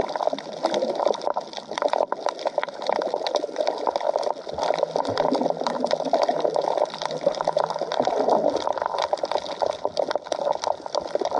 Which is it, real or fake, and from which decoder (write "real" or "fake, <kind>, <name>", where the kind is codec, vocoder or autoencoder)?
real